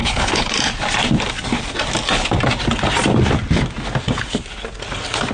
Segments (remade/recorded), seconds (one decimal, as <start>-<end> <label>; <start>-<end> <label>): 0.0-0.5 remade; 0.5-5.3 recorded